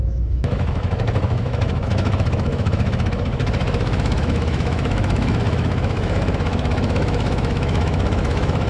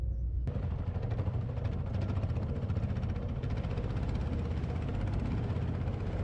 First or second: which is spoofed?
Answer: first